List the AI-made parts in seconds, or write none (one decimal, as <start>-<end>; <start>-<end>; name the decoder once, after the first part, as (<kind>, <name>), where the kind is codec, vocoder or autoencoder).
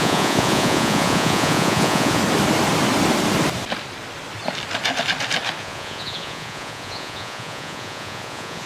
0.0-2.2 (vocoder, Vocos); 5.6-8.7